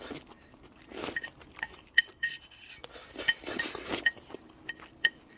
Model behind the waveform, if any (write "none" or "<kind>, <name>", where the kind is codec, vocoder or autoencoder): none